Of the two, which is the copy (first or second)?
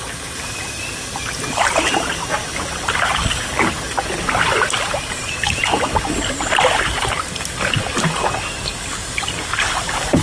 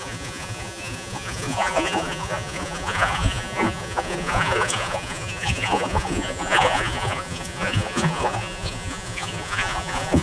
second